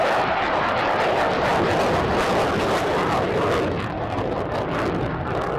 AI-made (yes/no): no